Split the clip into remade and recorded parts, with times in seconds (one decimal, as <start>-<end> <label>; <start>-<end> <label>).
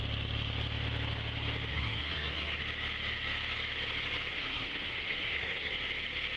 0.0-1.7 recorded; 1.7-2.6 remade; 2.6-4.3 recorded; 4.3-5.7 remade; 5.7-6.4 recorded